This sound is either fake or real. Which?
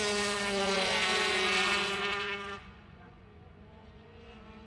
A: fake